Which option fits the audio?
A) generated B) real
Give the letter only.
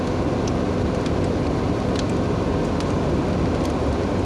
B